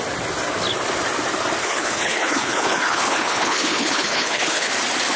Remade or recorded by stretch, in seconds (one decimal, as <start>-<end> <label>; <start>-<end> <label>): 0.0-1.6 recorded; 1.6-4.7 remade; 4.7-5.2 recorded